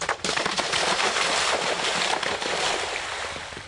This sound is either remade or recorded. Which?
recorded